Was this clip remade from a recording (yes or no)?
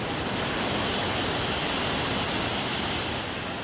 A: no